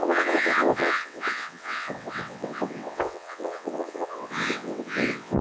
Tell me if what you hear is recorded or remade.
remade